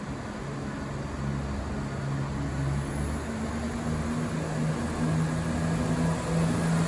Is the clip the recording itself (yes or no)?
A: yes